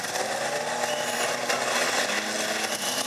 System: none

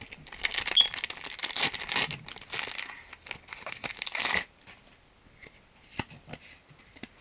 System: none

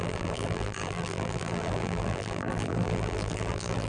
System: vocoder, BigVGAN v2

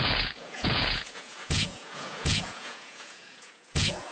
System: vocoder, Vocos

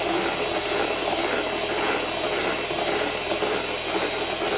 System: none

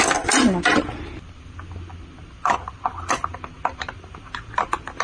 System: none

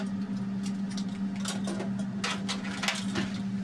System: none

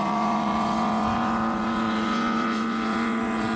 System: vocoder, Vocos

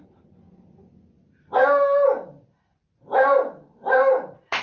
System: none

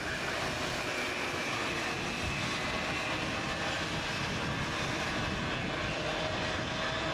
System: none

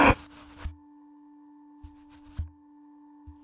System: none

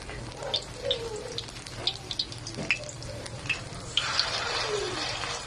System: none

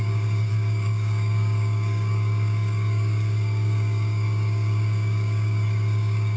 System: codec, DAC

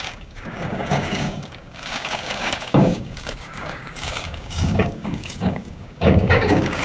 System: codec, DAC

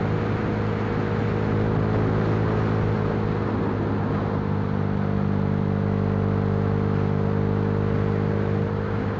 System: none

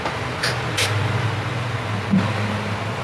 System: none